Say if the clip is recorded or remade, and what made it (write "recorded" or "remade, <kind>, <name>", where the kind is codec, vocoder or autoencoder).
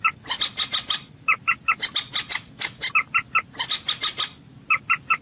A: recorded